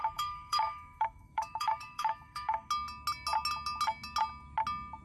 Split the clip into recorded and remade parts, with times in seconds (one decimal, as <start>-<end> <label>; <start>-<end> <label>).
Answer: 0.0-2.7 remade; 2.7-5.0 recorded